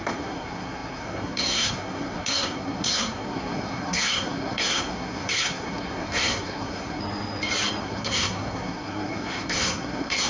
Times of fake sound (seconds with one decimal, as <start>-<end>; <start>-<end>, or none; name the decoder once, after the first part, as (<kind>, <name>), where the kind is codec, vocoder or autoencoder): 0.0-7.0 (codec, SNAC); 7.8-10.3